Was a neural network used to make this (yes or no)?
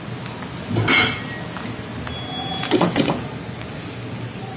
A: no